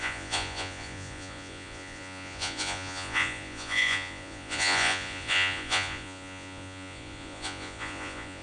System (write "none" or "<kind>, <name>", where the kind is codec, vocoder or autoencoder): vocoder, Vocos